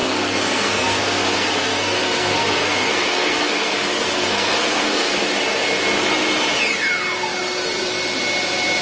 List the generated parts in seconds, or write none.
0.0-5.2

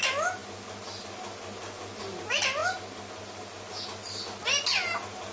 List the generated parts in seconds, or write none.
none

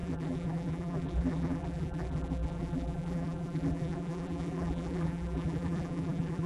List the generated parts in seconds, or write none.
0.0-6.5

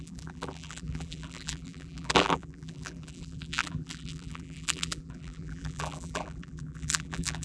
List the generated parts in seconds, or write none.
0.0-7.4